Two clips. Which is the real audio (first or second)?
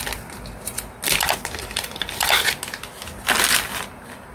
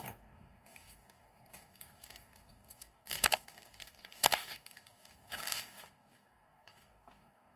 first